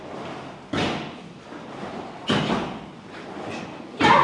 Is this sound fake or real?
real